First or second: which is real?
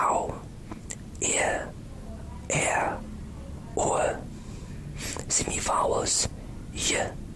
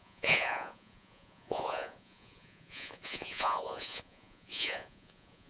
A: first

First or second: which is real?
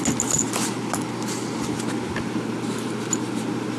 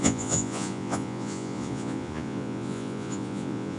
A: first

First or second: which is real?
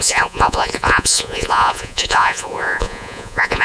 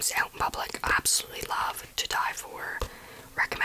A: second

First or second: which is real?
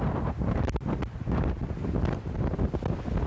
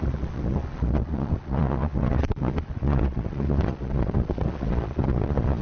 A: first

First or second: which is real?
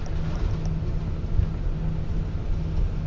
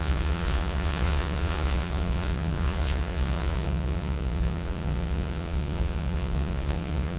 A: first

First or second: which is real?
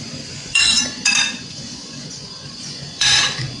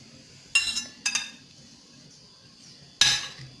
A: second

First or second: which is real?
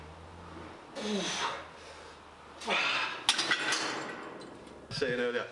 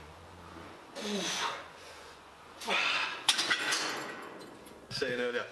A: first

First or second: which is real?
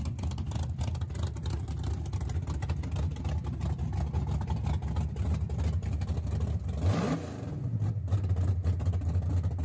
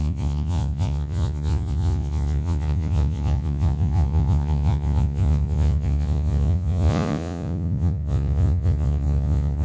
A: first